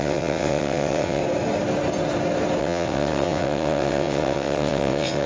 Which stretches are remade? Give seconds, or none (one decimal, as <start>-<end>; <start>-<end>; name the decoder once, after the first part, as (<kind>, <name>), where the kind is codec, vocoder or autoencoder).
0.0-1.2 (vocoder, WaveNeXt); 2.6-5.3